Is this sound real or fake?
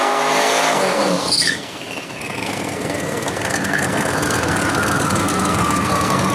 fake